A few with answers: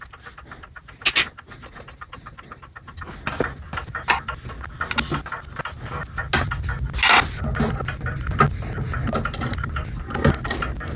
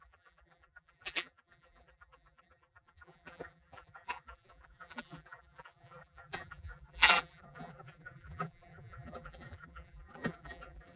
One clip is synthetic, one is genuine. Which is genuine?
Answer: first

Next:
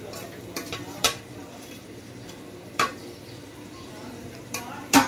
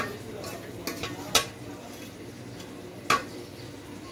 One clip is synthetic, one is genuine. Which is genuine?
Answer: second